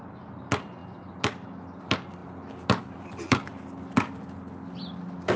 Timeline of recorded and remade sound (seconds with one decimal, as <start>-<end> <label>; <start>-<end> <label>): 0.0-5.4 recorded